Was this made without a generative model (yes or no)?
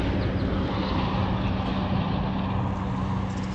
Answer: yes